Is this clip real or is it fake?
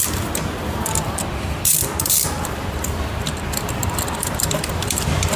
fake